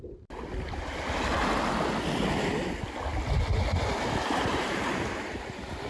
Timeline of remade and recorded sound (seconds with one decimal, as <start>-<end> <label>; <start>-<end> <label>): 0.0-4.5 recorded; 4.5-5.9 remade